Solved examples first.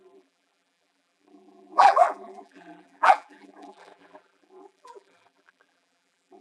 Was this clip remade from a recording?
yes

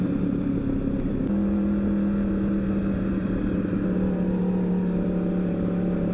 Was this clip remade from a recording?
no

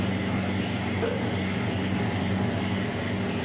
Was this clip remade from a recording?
no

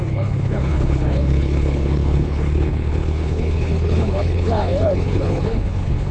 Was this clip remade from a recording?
yes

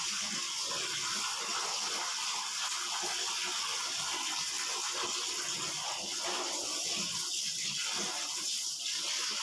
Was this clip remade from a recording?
no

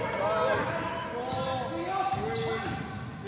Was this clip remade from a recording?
no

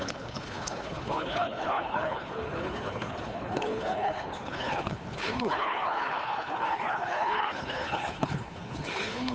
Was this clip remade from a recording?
yes